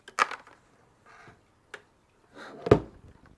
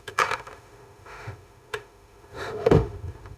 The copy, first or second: second